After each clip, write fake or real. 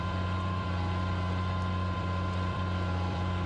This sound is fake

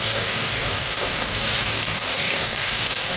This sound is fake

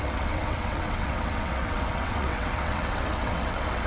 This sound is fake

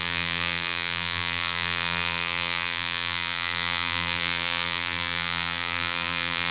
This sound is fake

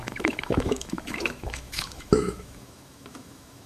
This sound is fake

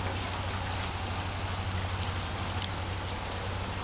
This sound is real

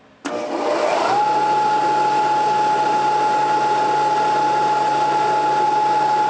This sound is real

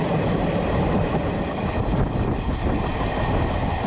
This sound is real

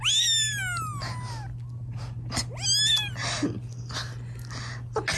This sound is real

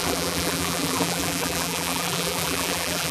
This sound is fake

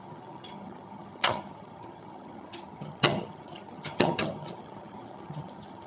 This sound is fake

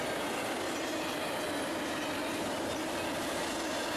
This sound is real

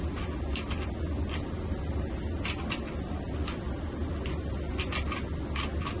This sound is real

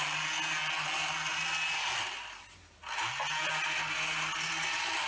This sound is real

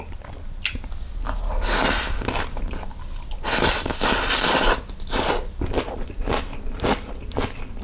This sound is real